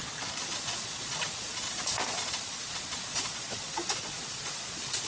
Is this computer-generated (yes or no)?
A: yes